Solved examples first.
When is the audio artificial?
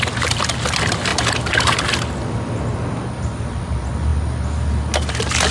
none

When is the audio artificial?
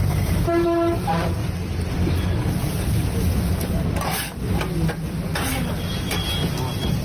none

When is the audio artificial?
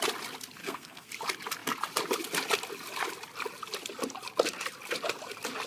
0.6-1.1 (codec, SNAC)